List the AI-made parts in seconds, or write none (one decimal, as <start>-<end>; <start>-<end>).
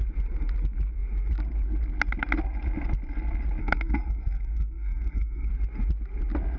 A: 3.6-5.5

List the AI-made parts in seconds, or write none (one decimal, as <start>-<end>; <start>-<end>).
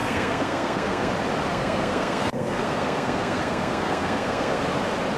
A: 0.0-1.1; 1.5-4.6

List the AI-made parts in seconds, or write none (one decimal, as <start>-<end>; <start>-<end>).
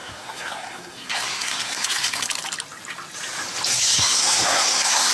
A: 0.0-2.3; 3.7-5.1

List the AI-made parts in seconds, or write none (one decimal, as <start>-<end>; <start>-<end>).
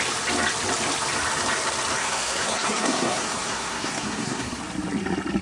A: 2.0-4.6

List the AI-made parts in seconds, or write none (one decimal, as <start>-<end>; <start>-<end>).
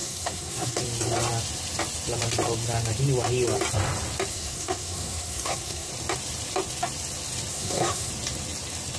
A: 0.0-0.8; 4.3-5.9; 7.5-8.1